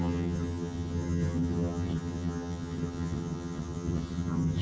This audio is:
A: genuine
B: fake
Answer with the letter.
B